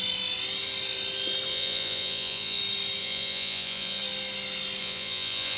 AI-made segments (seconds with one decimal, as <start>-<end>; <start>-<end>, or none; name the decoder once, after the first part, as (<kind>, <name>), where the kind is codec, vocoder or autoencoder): 1.5-2.6 (vocoder, Vocos); 3.0-4.0; 4.8-5.6